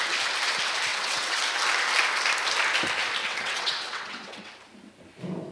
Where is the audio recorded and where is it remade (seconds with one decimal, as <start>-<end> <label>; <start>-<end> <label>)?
0.0-0.9 recorded; 0.9-1.4 remade; 1.4-3.2 recorded; 3.2-4.5 remade; 4.5-5.5 recorded